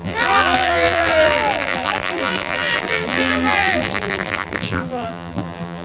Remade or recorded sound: remade